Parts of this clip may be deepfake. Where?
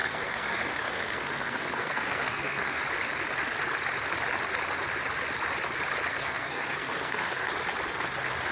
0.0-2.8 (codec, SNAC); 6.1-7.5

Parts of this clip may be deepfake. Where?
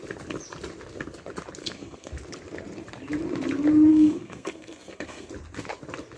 1.6-2.1 (codec, SNAC); 3.9-5.3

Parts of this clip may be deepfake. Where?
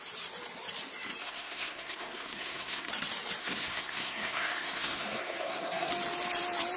1.2-2.9 (codec, SNAC); 3.4-5.9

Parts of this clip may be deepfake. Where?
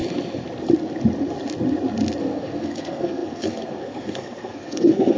2.2-5.2 (codec, SNAC)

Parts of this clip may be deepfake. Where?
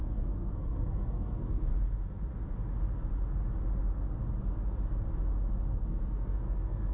0.0-1.6 (codec, SNAC); 5.7-6.9